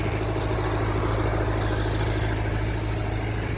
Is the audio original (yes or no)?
yes